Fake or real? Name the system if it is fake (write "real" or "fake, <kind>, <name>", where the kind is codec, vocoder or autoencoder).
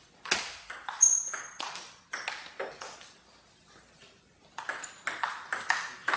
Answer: real